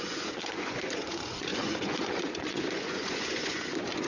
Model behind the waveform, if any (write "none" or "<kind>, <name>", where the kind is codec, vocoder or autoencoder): vocoder, Vocos